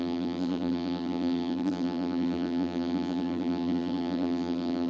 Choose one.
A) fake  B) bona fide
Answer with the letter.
A